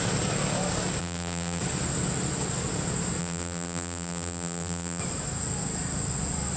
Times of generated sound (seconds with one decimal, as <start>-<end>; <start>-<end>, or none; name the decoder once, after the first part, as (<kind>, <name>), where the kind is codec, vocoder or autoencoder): 1.0-1.6 (vocoder, BigVGAN v2); 3.2-5.0